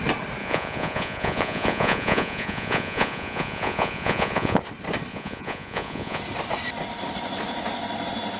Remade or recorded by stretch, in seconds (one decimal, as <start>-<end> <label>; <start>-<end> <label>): 0.0-0.4 recorded; 0.4-4.6 remade; 4.6-5.1 recorded; 5.1-6.2 remade; 6.2-8.4 recorded